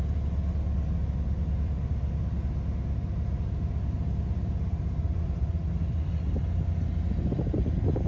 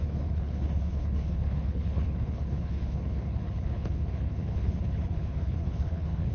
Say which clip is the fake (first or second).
second